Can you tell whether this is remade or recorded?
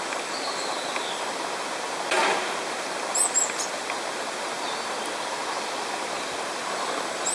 recorded